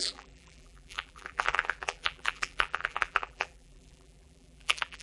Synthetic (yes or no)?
yes